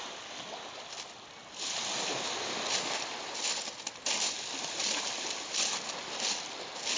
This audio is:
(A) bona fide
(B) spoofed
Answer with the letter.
A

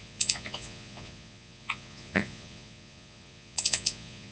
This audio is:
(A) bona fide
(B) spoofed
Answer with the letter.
B